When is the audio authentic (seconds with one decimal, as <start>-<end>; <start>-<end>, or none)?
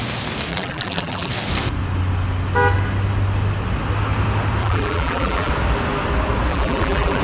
0.0-0.5; 1.3-4.6; 5.5-6.5